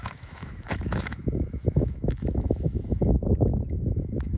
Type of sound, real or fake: fake